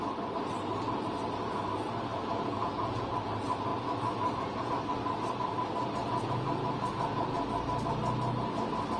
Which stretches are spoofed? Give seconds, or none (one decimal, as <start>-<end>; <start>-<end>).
2.1-3.1; 3.7-4.7; 6.0-7.4